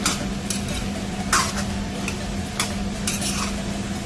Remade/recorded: recorded